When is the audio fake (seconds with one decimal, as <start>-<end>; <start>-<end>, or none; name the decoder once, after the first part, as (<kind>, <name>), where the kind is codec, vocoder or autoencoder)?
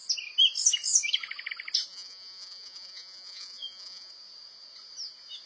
1.9-4.1 (vocoder, Vocos)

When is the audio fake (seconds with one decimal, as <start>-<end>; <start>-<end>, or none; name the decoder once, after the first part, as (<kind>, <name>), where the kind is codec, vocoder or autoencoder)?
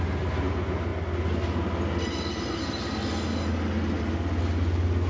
none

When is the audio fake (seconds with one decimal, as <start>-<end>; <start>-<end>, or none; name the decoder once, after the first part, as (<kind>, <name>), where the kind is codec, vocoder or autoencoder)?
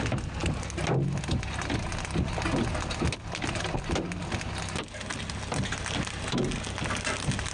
none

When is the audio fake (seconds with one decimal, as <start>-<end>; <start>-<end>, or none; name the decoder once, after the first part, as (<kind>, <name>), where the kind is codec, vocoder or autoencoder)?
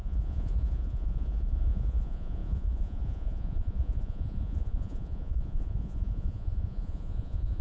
0.0-7.6 (vocoder, Vocos)